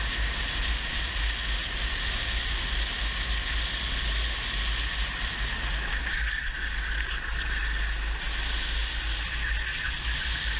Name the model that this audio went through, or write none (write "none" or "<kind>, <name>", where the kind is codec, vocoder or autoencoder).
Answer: none